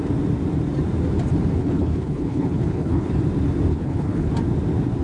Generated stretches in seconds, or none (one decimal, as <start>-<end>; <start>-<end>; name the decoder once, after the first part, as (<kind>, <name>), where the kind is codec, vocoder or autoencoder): 1.6-3.2 (codec, HILCodec); 3.7-4.3